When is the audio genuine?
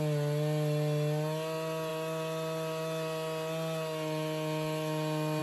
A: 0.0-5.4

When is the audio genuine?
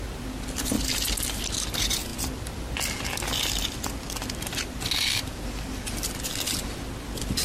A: 0.0-7.4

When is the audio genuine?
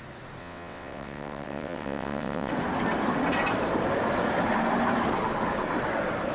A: 0.0-0.4; 2.5-6.3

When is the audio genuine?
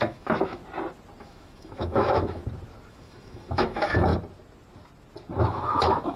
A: 0.6-1.2; 2.4-2.9; 4.1-5.4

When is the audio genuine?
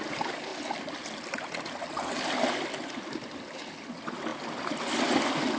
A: 0.0-5.6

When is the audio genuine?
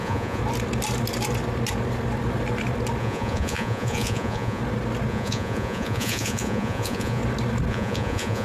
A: 0.4-3.0; 4.6-5.1; 7.2-7.7